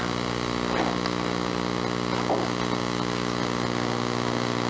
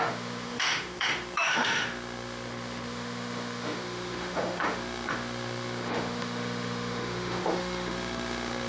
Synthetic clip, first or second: second